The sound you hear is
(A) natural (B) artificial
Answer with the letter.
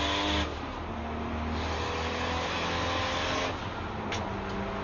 A